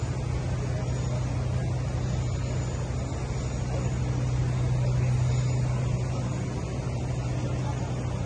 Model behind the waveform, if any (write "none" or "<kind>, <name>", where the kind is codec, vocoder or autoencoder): none